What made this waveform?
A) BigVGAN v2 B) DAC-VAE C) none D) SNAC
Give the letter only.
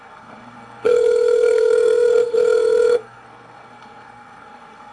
D